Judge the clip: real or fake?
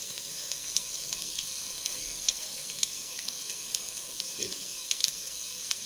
fake